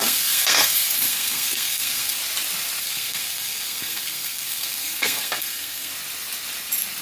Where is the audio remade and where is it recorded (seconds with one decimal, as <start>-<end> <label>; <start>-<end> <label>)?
0.0-2.2 remade; 2.2-2.8 recorded; 2.8-5.9 remade; 5.9-7.0 recorded